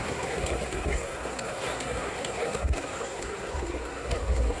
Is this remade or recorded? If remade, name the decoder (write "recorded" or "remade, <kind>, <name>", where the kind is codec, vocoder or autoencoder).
remade, codec, SNAC